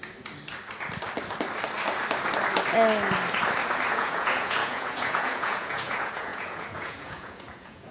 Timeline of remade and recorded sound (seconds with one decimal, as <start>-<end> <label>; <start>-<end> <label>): 0.0-3.9 recorded; 3.9-7.9 remade